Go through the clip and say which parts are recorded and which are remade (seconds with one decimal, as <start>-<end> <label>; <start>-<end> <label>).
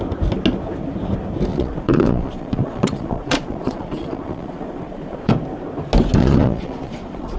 0.0-1.5 recorded; 1.5-5.3 remade; 5.3-6.2 recorded; 6.2-7.4 remade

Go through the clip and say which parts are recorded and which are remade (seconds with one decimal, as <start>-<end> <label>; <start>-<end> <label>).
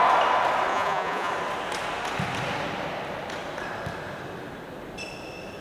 0.0-0.7 recorded; 0.7-1.3 remade; 1.3-5.6 recorded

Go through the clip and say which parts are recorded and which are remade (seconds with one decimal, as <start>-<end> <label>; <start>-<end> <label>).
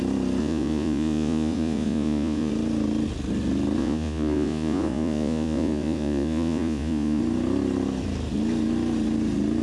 0.0-0.4 recorded; 0.4-2.5 remade; 2.5-3.8 recorded; 3.8-7.2 remade; 7.2-9.6 recorded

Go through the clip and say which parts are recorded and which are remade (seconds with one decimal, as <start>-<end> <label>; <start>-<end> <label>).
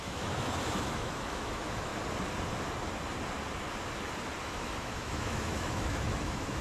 0.0-1.9 remade; 1.9-4.4 recorded; 4.4-6.6 remade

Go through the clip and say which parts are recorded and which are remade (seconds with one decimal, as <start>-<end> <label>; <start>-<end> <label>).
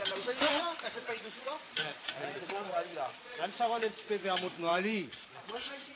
0.0-0.5 recorded; 0.5-4.1 remade; 4.1-4.7 recorded; 4.7-6.0 remade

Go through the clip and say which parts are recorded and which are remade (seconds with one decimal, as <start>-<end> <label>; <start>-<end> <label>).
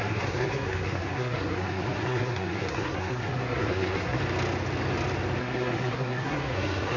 0.0-4.2 remade; 4.2-5.4 recorded; 5.4-7.0 remade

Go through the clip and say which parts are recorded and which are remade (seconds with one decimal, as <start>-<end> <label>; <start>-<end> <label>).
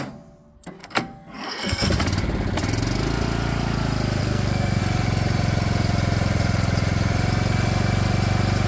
0.0-0.8 recorded; 0.8-1.9 remade; 1.9-4.2 recorded; 4.2-4.8 remade; 4.8-8.7 recorded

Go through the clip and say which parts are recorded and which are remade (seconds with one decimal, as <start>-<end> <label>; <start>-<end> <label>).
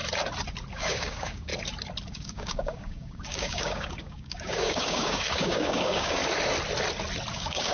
0.0-0.7 recorded; 0.7-1.5 remade; 1.5-2.1 recorded; 2.1-6.2 remade; 6.2-7.3 recorded; 7.3-7.7 remade